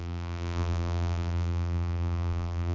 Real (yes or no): no